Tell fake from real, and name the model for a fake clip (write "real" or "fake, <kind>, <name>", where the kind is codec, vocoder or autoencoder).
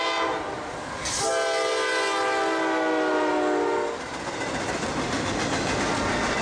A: real